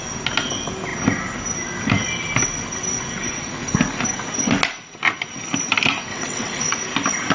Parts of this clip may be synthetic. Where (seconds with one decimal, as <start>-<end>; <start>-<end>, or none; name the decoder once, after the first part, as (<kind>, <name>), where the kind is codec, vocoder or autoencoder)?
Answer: 6.1-6.7 (vocoder, WaveNeXt)